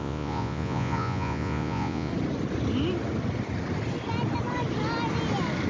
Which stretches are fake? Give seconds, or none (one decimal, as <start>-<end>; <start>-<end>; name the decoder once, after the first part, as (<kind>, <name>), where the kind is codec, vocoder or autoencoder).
0.0-2.1 (vocoder, Vocos)